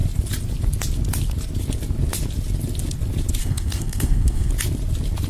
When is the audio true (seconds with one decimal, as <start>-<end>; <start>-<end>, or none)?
0.0-3.4; 4.5-5.3